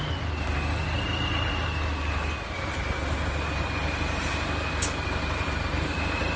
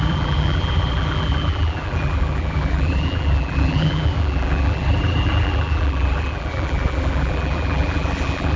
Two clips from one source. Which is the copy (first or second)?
second